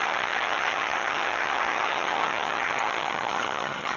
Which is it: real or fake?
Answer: fake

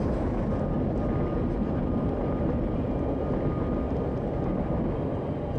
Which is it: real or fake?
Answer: real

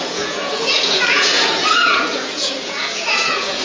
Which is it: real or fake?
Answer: fake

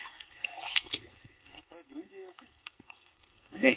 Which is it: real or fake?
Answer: fake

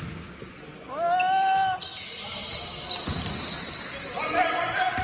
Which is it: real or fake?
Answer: real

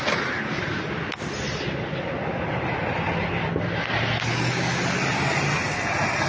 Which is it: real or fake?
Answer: real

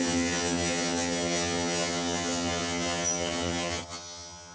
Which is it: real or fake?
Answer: fake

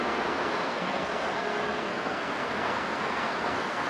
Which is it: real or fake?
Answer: fake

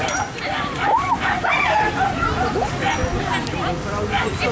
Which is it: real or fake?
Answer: real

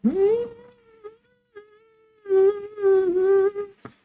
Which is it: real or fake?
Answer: real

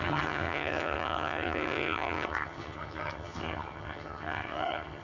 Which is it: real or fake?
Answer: fake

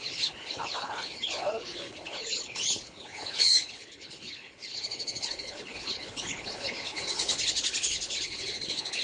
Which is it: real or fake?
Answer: fake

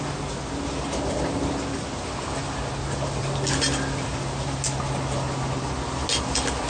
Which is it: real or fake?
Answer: real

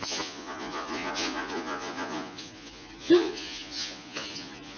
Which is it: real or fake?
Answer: fake